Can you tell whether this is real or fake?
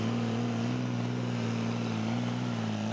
real